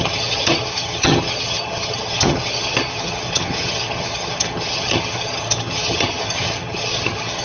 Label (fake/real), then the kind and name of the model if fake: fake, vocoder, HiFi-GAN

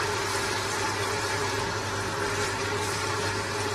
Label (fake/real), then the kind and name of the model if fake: real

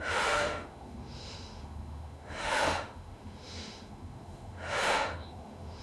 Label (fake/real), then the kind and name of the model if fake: fake, autoencoder, DAC-VAE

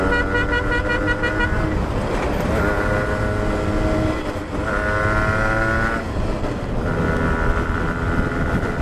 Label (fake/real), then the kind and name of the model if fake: real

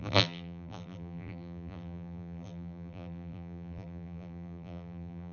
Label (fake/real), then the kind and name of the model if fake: fake, vocoder, BigVGAN v2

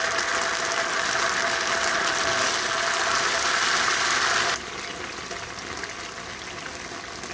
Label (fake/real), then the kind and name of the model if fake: real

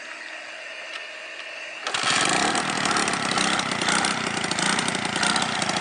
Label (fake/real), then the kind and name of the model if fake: real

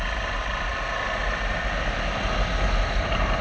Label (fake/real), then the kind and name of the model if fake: real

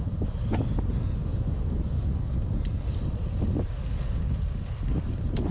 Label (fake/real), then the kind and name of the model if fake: real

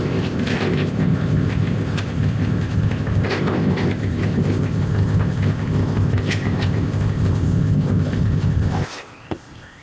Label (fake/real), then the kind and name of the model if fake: fake, codec, ZipCodec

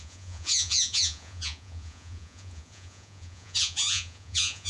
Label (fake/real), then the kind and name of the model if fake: fake, vocoder, Vocos